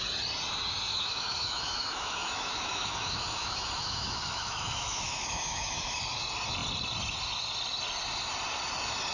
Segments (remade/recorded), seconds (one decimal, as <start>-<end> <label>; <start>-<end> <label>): 0.0-0.9 recorded; 0.9-6.0 remade; 6.0-9.1 recorded